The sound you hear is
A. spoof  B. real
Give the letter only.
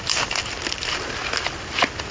B